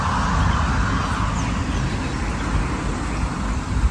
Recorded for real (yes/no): yes